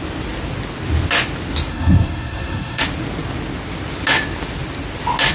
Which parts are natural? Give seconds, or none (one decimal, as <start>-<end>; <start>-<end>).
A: 0.0-1.7; 2.8-5.3